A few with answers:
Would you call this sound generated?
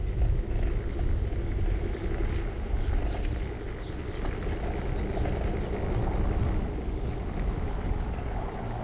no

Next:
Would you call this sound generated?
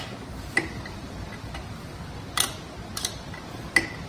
yes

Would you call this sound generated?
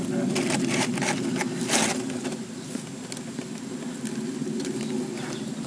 no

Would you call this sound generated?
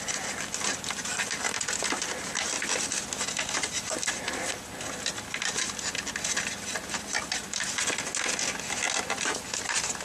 no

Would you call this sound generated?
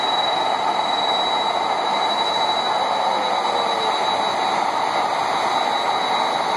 no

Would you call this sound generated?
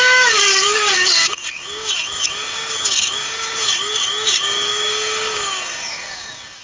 yes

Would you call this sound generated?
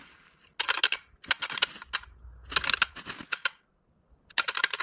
no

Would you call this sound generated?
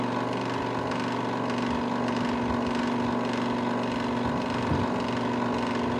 no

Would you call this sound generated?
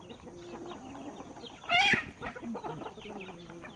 no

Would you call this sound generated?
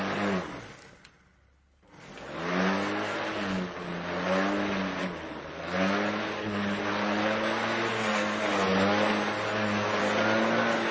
no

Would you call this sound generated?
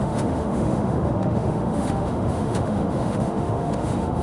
yes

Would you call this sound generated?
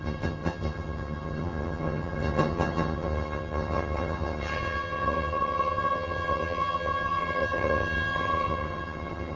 yes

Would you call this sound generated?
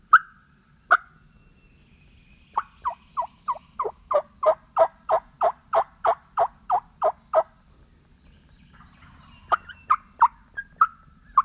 no